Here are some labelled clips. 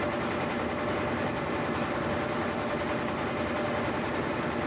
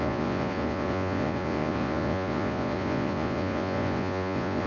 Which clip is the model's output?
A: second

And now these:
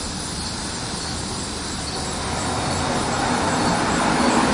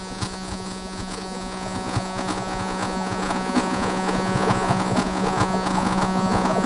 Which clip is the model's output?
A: second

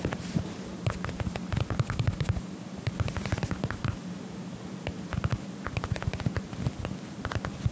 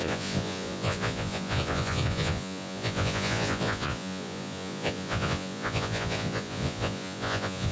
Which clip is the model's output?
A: second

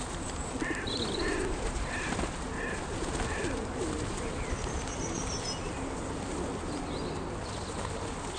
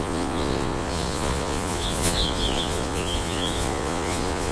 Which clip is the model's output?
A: second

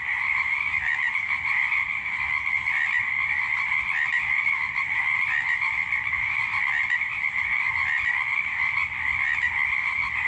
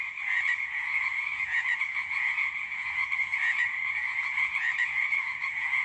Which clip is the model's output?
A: second